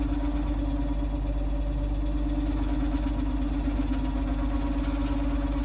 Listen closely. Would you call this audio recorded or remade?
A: recorded